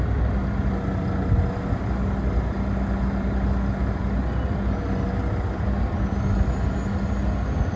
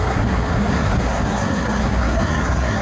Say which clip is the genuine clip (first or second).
first